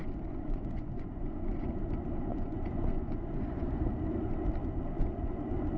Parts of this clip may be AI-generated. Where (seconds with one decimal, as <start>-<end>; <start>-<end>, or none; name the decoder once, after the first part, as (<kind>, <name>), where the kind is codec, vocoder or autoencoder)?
0.0-1.7 (vocoder, Vocos); 2.3-3.8